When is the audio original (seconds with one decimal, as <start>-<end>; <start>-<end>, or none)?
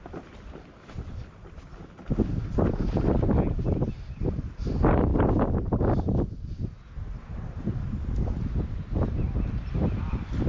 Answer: 0.0-10.5